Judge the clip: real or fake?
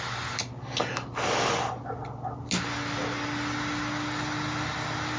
real